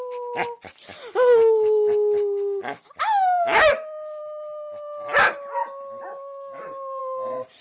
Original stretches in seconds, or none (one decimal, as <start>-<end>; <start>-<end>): 0.0-7.6